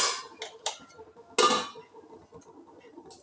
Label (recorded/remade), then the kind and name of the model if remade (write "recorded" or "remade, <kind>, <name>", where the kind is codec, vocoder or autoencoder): recorded